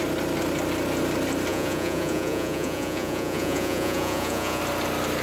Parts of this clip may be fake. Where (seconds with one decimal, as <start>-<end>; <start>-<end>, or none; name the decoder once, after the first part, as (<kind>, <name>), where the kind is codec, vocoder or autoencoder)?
1.5-4.6 (vocoder, Vocos)